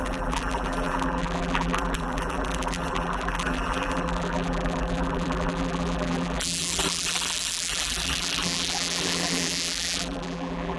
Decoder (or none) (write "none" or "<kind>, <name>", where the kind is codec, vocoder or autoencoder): vocoder, BigVGAN v2